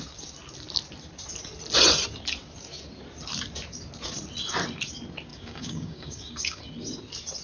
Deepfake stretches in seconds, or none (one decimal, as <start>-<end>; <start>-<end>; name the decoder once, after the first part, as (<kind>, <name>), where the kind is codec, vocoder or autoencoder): 5.3-6.6 (codec, DAC)